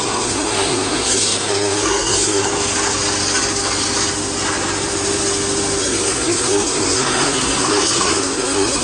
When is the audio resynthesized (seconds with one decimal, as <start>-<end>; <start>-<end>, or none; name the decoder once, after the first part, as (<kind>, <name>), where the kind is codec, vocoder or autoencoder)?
0.0-2.5 (codec, SNAC); 5.8-8.8